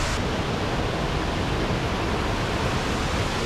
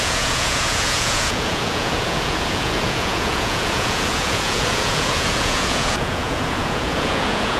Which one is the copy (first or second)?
second